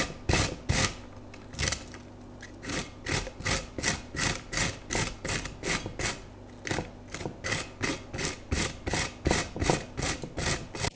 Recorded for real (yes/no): yes